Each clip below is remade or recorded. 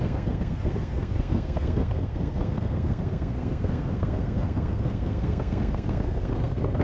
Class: remade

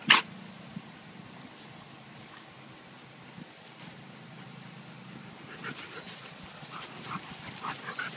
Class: recorded